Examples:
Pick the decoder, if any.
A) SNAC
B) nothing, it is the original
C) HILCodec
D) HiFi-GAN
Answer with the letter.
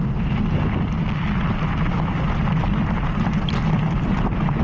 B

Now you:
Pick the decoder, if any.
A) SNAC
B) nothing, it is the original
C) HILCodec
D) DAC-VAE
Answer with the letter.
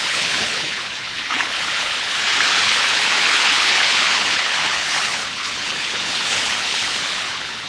C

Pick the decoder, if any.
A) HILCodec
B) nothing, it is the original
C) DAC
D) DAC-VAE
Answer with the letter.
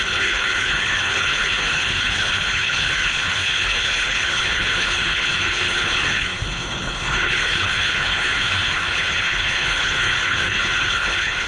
A